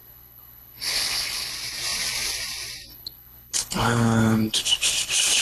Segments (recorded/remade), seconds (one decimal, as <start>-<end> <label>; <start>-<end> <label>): 0.0-1.5 remade; 1.5-2.9 recorded; 2.9-5.4 remade